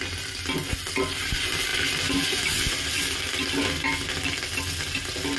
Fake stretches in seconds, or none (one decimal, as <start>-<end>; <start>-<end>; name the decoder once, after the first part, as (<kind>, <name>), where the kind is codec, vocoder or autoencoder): none